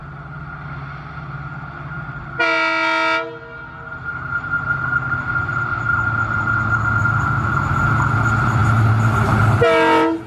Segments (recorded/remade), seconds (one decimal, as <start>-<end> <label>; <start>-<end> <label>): 0.0-10.3 recorded